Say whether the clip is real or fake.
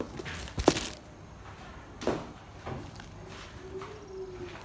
real